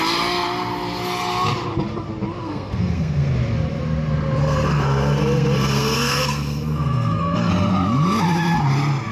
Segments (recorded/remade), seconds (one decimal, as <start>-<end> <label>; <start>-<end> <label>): 0.0-2.4 recorded; 2.4-3.3 remade; 3.3-4.4 recorded; 4.4-7.5 remade; 7.5-9.1 recorded